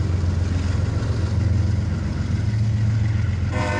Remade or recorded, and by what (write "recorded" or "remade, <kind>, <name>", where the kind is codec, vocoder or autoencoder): recorded